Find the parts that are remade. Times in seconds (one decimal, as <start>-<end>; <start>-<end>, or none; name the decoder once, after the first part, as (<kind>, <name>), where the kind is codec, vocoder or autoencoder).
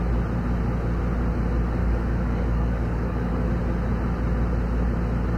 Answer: 1.8-3.5 (codec, DAC)